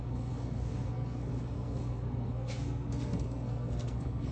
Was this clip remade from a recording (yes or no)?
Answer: yes